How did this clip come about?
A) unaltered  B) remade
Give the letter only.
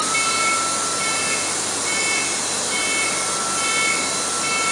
A